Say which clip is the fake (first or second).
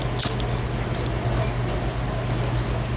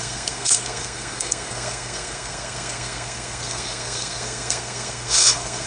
second